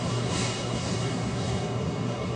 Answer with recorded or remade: remade